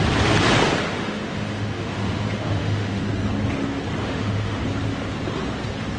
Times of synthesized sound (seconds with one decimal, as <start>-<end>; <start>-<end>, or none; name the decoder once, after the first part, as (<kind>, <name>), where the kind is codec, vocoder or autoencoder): 0.9-3.0 (autoencoder, DAC-VAE); 4.0-4.6